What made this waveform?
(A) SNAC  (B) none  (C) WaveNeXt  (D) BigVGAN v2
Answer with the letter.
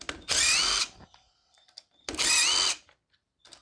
B